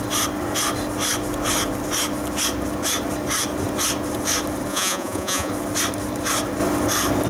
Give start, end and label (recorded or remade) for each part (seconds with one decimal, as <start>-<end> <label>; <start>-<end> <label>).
0.0-4.7 recorded; 4.7-5.5 remade; 5.5-7.3 recorded